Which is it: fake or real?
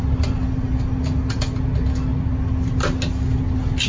real